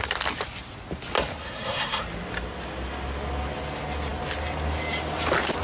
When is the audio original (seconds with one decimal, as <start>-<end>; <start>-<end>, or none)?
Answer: 0.0-1.4; 2.0-5.6